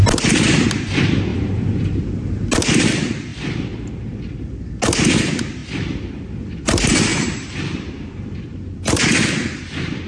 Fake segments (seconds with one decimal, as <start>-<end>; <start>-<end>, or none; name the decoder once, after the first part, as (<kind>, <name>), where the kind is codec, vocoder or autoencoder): 1.3-2.1 (vocoder, BigVGAN v2); 3.3-4.6; 5.6-6.1; 7.1-8.1